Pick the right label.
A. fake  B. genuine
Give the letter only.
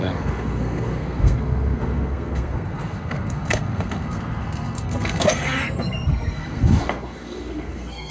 A